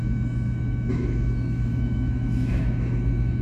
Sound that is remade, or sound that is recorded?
remade